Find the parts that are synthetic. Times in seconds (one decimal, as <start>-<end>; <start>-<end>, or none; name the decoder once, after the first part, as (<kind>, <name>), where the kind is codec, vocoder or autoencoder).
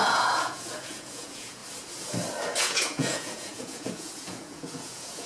0.0-1.6 (vocoder, Vocos); 2.6-5.3